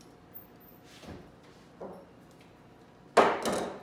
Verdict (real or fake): real